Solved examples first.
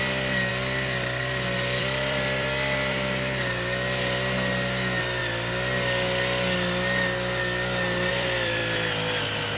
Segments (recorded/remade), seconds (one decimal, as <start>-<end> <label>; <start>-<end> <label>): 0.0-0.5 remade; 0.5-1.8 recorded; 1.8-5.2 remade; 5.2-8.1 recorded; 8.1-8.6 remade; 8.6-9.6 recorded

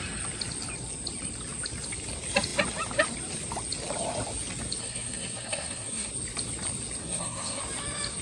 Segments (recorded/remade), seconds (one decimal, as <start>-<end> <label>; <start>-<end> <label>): 0.0-4.8 recorded; 4.8-6.1 remade; 6.1-7.0 recorded; 7.0-7.6 remade; 7.6-8.2 recorded

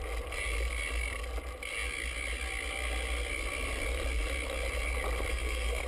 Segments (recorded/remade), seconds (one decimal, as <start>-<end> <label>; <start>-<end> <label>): 0.0-5.3 recorded; 5.3-5.9 remade

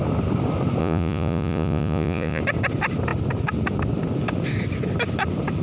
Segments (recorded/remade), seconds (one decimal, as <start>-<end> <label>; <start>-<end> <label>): 0.0-0.8 recorded; 0.8-2.4 remade; 2.4-5.6 recorded